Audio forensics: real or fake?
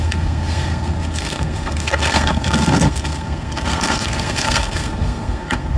fake